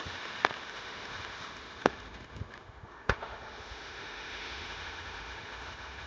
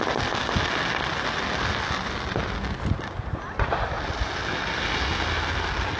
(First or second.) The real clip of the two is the second